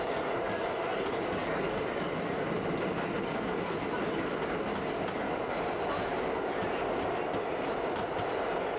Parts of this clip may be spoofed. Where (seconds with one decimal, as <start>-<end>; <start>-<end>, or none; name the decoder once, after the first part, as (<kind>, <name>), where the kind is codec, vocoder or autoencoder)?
none